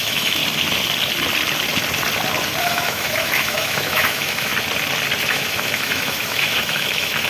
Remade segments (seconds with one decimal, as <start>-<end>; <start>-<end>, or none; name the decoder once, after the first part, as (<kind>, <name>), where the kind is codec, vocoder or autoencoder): 0.0-0.4 (autoencoder, DAC-VAE); 2.6-4.5; 5.2-7.3